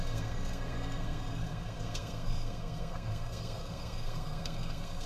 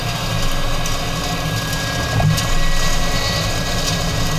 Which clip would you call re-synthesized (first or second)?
first